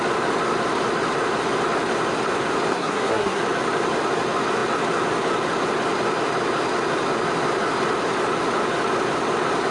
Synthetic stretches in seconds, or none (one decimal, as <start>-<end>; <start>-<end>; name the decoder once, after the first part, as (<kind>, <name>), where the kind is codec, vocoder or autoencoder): 2.7-3.4 (codec, SNAC)